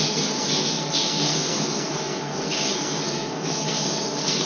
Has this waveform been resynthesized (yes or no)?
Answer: yes